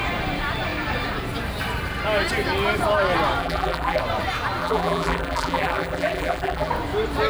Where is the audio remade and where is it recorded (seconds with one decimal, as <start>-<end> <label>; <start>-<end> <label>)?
0.0-3.4 recorded; 3.4-4.0 remade; 4.0-4.6 recorded; 4.6-6.7 remade; 6.7-7.3 recorded